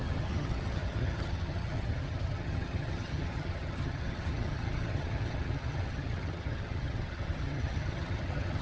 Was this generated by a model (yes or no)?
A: yes